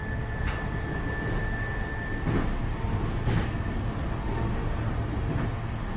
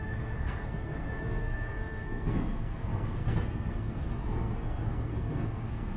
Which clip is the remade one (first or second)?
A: second